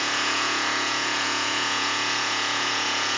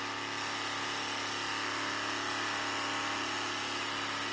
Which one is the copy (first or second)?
first